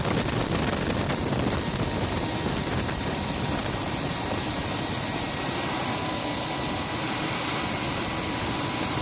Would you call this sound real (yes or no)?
no